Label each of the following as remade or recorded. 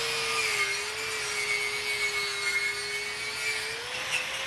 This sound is recorded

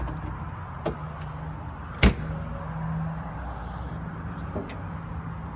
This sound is recorded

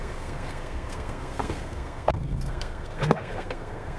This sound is remade